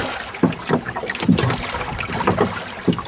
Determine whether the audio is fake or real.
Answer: real